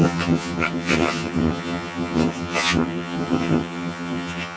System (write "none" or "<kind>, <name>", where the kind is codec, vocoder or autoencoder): vocoder, HiFi-GAN